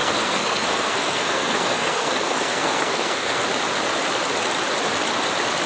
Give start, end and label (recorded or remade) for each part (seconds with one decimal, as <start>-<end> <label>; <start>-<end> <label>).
0.0-3.4 remade; 3.4-5.7 recorded